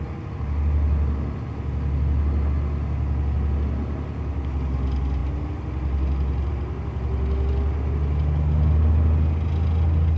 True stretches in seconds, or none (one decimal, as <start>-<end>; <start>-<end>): 0.0-10.2